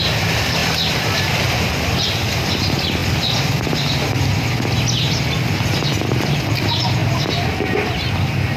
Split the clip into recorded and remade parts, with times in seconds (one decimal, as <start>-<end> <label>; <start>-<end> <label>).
0.0-0.6 recorded; 0.6-1.7 remade; 1.7-3.0 recorded; 3.0-4.3 remade; 4.3-7.0 recorded; 7.0-7.6 remade; 7.6-8.6 recorded